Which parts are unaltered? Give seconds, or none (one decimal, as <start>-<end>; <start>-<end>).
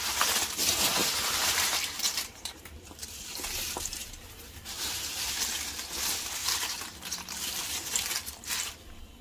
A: 0.0-1.0; 5.3-6.4; 8.7-9.2